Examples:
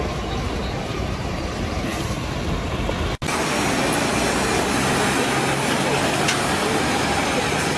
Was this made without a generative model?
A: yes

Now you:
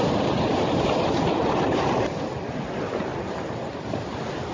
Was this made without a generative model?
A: yes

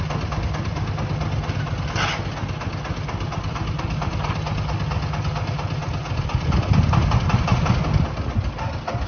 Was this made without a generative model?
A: yes